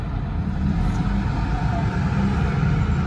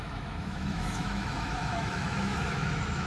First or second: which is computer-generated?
second